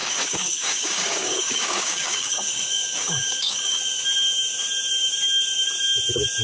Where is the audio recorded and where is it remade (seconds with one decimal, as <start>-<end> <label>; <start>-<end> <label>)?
0.0-3.8 remade; 3.8-6.4 recorded